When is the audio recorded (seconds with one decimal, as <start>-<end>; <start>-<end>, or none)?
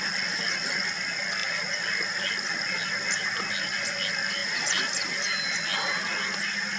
0.0-6.8